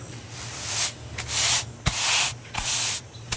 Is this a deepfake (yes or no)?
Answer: no